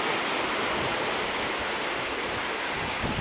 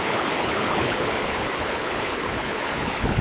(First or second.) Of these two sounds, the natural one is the first